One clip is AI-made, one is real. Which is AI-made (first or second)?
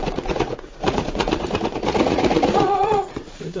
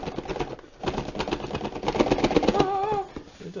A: first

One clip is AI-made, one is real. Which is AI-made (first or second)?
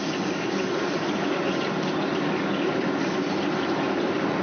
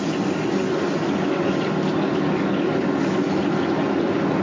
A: first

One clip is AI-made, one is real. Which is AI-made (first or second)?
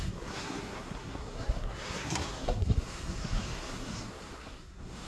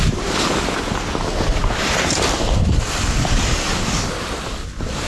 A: first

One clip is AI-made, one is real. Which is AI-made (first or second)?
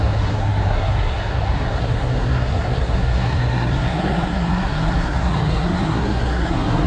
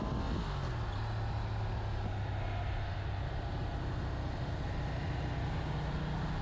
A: first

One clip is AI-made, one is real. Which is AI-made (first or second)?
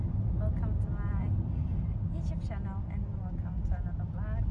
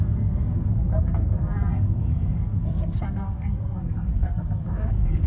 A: second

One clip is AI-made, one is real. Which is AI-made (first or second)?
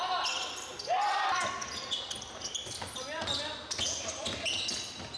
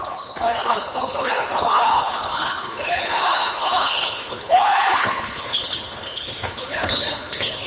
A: second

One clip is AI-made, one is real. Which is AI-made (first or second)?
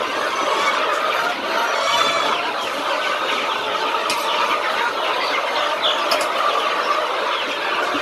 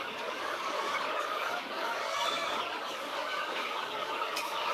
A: second